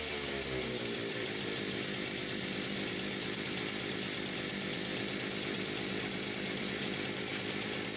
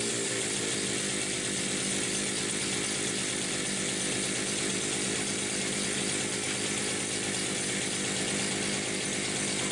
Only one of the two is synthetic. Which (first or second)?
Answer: first